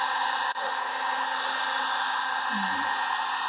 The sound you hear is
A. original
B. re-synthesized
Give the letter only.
A